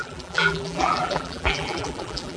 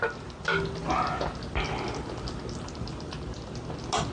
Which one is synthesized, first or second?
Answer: first